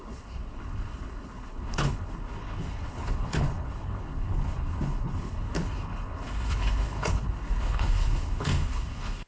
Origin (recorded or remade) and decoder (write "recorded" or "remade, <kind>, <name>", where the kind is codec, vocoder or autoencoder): remade, codec, HILCodec